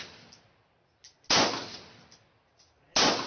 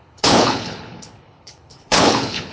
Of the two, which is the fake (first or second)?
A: second